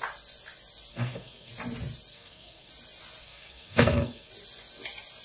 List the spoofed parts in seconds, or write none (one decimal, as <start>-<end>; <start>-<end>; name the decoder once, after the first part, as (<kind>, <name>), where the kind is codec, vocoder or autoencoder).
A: 0.9-1.5 (codec, SNAC); 2.1-2.7; 3.2-4.3